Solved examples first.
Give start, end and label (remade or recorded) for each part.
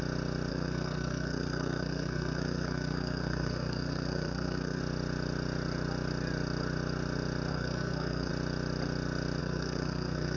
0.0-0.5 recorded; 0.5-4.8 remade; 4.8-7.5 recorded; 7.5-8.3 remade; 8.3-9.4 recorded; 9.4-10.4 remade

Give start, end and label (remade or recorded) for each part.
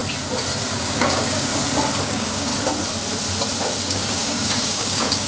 0.0-0.7 recorded; 0.7-1.5 remade; 1.5-2.0 recorded; 2.0-2.5 remade; 2.5-3.8 recorded; 3.8-5.3 remade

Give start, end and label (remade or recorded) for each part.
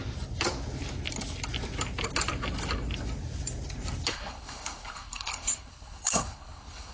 0.0-4.1 recorded; 4.1-6.9 remade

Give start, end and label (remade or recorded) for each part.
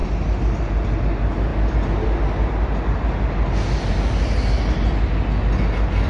0.0-6.1 recorded